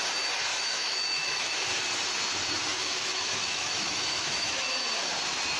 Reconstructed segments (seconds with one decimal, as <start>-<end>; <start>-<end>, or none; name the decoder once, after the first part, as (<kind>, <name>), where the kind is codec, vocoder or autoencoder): 0.5-1.7 (autoencoder, DAC-VAE); 2.7-4.6